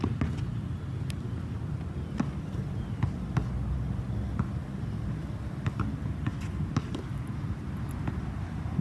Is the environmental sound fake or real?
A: real